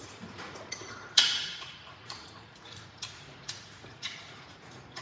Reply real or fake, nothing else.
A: fake